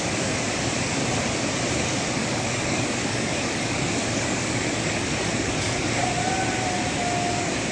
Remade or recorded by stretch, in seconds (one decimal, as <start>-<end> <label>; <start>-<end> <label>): 0.0-1.0 remade; 1.0-1.8 recorded; 1.8-6.0 remade; 6.0-7.3 recorded; 7.3-7.7 remade

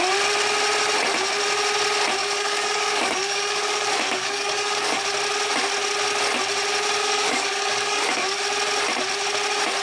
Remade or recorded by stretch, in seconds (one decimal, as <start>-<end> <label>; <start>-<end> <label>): 0.0-2.2 recorded; 2.2-5.0 remade; 5.0-7.0 recorded; 7.0-8.4 remade; 8.4-9.8 recorded

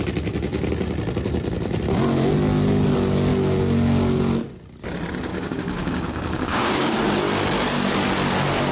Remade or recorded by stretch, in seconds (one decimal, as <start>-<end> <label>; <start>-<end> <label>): 0.0-5.3 recorded; 5.3-7.0 remade; 7.0-8.7 recorded

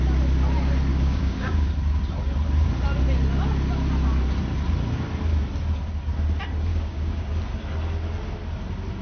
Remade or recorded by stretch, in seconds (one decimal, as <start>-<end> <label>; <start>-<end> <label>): 0.0-0.9 recorded; 0.9-1.7 remade; 1.7-6.7 recorded; 6.7-7.3 remade; 7.3-9.0 recorded

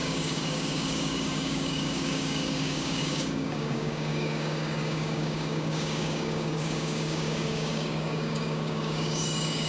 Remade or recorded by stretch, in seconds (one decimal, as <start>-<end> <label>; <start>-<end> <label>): 0.0-9.7 remade